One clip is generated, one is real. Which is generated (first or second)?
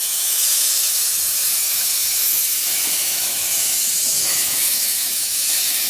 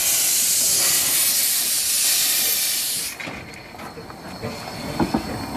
first